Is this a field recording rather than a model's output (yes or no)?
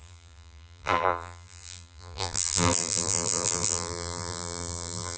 no